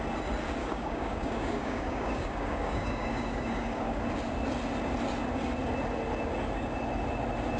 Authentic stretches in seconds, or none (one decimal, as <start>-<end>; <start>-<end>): 0.0-0.6; 4.0-7.6